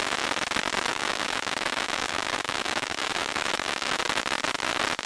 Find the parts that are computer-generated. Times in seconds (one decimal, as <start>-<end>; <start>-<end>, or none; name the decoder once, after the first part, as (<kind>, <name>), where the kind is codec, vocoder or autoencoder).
0.9-4.0 (autoencoder, DAC-VAE)